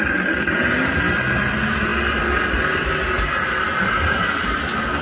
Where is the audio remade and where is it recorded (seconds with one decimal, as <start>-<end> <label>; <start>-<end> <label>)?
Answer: 0.0-5.0 recorded